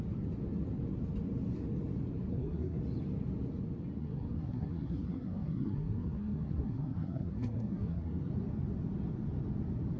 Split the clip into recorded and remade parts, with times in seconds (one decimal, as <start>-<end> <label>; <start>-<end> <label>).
0.0-2.3 recorded; 2.3-2.8 remade; 2.8-4.0 recorded; 4.0-8.3 remade; 8.3-10.0 recorded